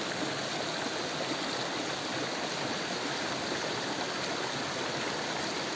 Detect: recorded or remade recorded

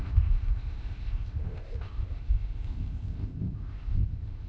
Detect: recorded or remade remade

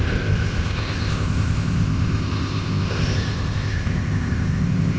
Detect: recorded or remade remade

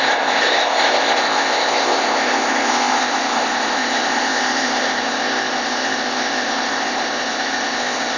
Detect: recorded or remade remade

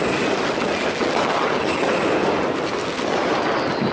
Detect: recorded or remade recorded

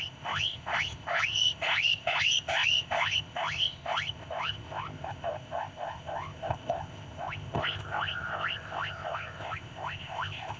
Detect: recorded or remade remade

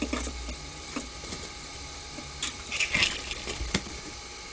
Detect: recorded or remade recorded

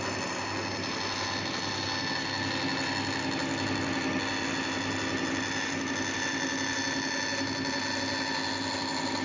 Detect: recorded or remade recorded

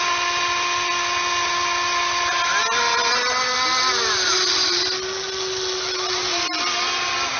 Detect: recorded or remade recorded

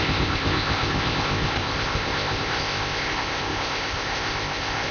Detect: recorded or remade remade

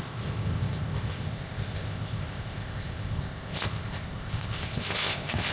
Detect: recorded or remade remade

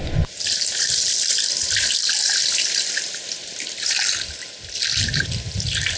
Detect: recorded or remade recorded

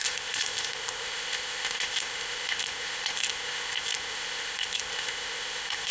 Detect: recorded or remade remade